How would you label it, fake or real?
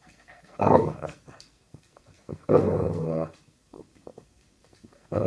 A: fake